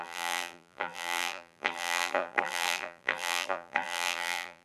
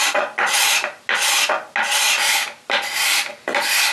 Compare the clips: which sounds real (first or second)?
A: second